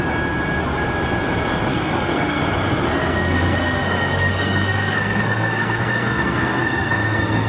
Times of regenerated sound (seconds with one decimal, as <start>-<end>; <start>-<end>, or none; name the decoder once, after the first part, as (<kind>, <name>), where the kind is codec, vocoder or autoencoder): 1.7-2.4 (codec, SNAC); 3.0-7.5